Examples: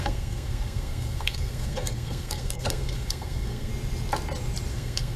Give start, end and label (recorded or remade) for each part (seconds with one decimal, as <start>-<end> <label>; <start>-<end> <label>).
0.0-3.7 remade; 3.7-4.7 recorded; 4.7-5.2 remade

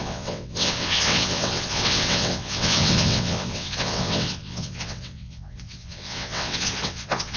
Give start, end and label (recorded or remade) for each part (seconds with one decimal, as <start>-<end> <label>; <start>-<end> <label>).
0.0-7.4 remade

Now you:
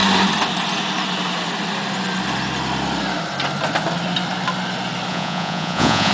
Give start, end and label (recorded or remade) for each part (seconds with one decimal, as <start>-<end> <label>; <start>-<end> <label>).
0.0-5.1 recorded; 5.1-6.1 remade

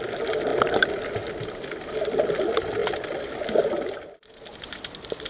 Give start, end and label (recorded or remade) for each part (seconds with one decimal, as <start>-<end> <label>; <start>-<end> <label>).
0.0-5.3 recorded

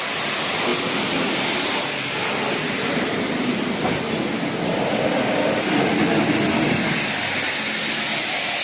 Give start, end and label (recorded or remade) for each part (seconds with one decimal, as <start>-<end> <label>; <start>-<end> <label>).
0.0-8.6 recorded